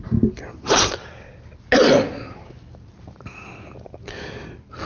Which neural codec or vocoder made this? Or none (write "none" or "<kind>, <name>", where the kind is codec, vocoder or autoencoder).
none